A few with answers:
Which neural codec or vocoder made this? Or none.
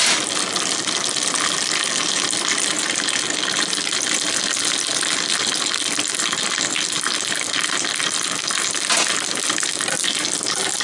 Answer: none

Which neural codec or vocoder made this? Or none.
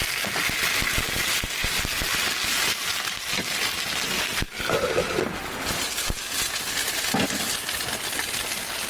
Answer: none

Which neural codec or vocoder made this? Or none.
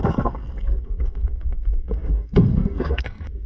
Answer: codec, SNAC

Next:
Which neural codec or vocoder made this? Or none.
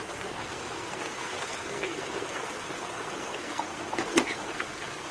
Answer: codec, SNAC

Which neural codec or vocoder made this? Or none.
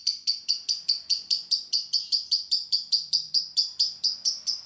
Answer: vocoder, Vocos